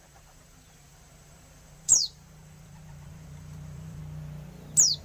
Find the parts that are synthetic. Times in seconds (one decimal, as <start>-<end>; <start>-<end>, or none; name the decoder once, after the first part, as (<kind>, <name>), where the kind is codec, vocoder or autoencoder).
0.0-4.0 (vocoder, BigVGAN v2)